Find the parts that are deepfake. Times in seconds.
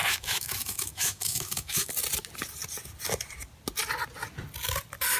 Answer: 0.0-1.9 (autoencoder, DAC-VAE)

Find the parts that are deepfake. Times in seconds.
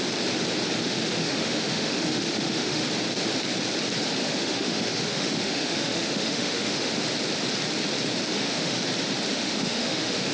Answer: 0.8-2.8 (autoencoder, DAC-VAE); 4.2-6.9; 8.3-8.8; 9.3-10.3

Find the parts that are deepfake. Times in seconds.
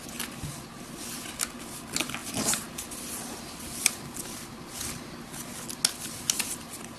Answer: none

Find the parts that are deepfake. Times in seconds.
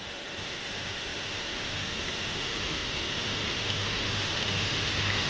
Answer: 0.0-5.3 (autoencoder, DAC-VAE)